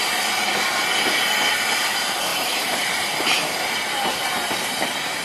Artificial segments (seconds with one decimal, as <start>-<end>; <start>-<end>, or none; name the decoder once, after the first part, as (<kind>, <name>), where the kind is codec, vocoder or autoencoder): 2.3-5.2 (vocoder, BigVGAN v2)